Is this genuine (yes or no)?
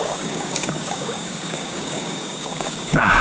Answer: no